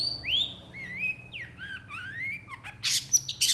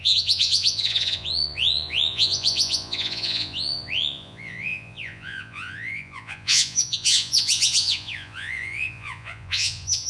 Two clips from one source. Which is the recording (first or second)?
first